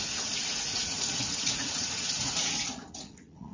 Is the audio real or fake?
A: fake